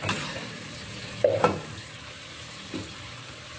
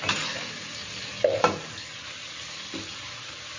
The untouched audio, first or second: second